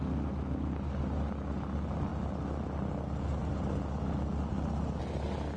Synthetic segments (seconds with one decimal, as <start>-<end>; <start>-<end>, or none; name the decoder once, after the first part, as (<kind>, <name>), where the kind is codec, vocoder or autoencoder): none